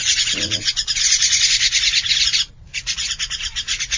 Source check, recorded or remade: remade